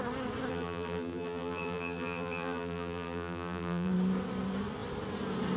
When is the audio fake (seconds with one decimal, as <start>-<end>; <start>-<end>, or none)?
0.5-3.9